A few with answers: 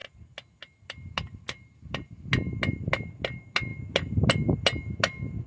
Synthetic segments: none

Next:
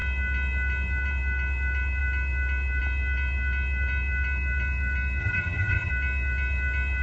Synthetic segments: 5.2-5.9 (vocoder, HiFi-GAN)

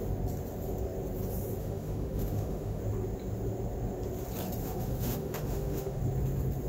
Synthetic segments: 1.6-2.8 (autoencoder, DAC-VAE); 4.6-6.0